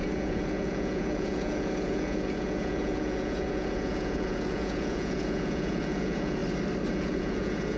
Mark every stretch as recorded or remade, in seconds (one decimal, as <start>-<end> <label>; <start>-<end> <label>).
0.0-6.4 remade; 6.4-6.9 recorded; 6.9-7.8 remade